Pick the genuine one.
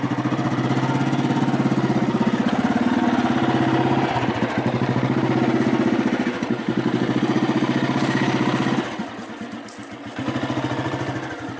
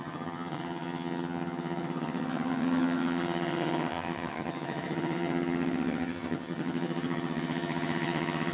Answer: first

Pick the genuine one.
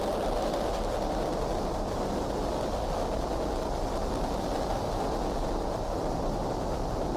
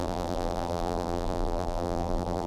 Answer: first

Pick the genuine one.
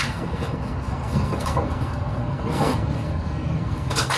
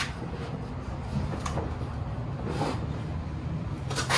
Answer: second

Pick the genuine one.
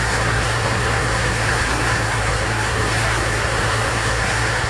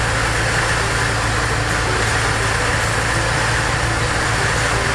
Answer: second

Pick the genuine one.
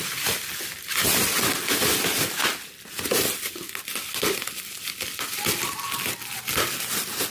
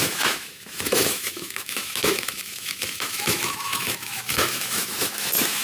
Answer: first